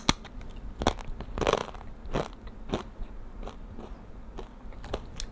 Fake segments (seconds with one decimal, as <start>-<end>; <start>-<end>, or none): none